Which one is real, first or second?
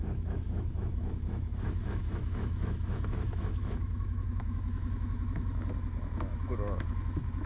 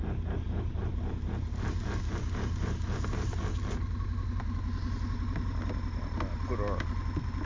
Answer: second